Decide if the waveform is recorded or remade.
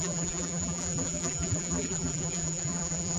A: remade